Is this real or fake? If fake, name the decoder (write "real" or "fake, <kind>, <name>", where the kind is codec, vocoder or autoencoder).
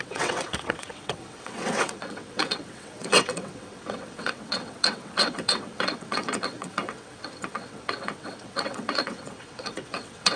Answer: fake, vocoder, WaveNeXt